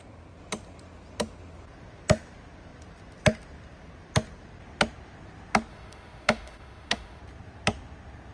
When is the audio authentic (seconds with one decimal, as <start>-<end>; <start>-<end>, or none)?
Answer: 0.0-5.7; 7.2-8.3